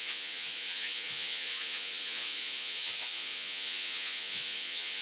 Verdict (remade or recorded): remade